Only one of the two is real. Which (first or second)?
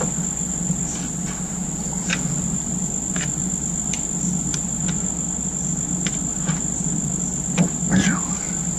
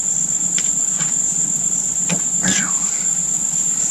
first